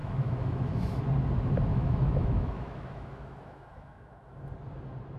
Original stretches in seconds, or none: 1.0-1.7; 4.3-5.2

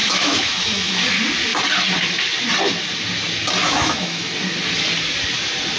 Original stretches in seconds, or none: 1.0-3.6; 4.3-5.8

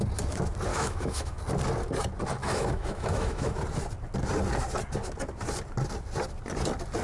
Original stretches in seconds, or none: 0.0-0.7; 1.4-2.4; 3.6-7.0

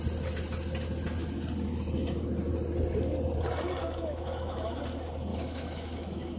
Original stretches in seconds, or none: 0.0-3.8; 4.8-5.3

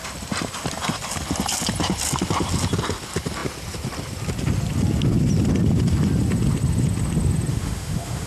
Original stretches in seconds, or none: 0.0-7.5

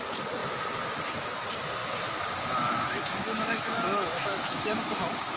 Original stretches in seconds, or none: 0.0-1.8; 5.0-5.4

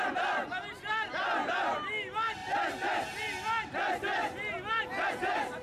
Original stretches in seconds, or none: 0.0-5.6